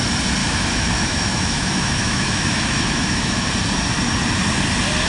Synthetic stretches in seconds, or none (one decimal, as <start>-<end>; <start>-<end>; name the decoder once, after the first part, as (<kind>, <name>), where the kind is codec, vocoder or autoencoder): 0.4-3.5 (autoencoder, DAC-VAE)